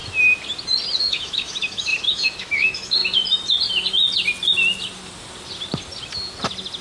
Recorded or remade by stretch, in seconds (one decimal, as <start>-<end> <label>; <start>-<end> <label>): 0.0-1.0 recorded; 1.0-3.0 remade; 3.0-6.8 recorded